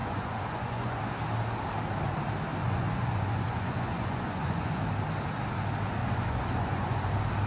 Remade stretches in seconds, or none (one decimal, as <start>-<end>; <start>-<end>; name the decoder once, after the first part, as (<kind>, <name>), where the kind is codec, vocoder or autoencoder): 0.0-1.0 (vocoder, Vocos); 2.6-4.8; 6.0-7.1